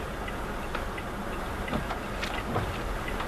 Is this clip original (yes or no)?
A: yes